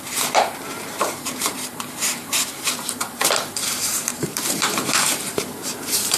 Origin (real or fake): fake